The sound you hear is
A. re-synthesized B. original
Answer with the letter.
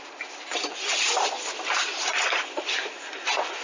B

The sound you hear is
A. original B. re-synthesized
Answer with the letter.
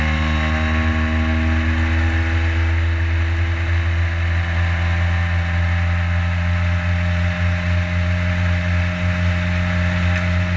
A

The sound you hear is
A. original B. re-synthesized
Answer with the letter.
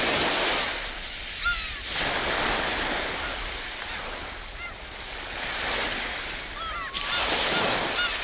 A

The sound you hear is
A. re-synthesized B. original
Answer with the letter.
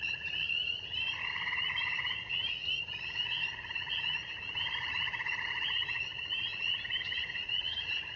A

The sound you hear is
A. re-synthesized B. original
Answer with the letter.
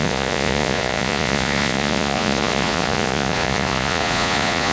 A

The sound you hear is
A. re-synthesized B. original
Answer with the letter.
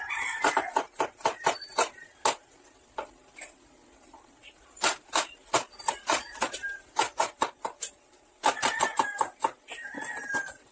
B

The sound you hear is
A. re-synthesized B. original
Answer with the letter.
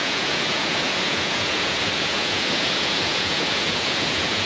A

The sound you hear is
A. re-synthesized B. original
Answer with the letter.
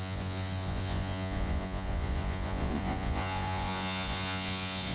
A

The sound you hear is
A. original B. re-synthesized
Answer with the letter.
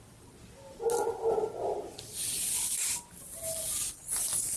A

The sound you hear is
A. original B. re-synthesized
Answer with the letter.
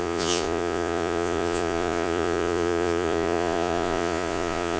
B